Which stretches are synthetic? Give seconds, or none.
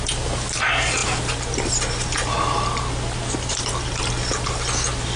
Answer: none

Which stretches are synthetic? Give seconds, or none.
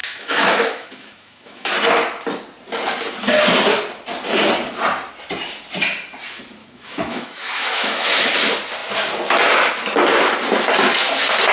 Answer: 0.0-1.7; 6.6-8.3